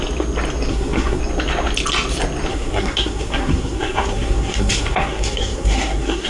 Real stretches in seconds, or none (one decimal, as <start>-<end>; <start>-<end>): 0.0-0.7; 1.2-2.5